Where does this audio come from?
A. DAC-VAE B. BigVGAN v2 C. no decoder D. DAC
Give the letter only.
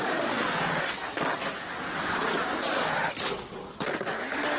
C